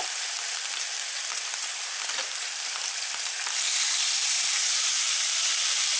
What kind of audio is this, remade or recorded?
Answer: remade